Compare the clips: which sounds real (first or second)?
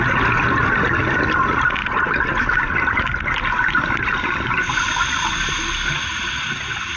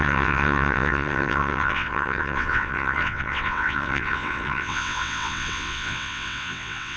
first